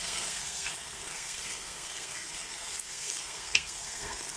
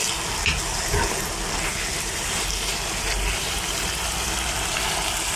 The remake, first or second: first